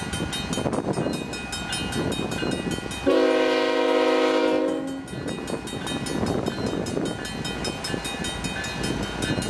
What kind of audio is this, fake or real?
real